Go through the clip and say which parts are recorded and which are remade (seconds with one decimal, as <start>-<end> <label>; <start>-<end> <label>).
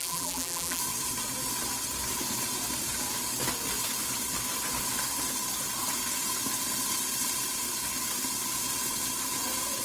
0.0-0.8 remade; 0.8-9.8 recorded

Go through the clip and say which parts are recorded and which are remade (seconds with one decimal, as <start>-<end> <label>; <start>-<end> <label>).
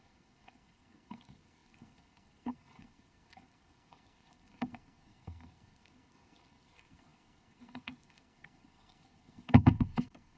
0.0-10.4 remade